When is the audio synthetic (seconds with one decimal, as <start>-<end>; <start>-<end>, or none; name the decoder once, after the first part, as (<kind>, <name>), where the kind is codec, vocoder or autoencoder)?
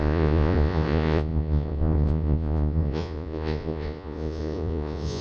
0.0-5.2 (vocoder, Vocos)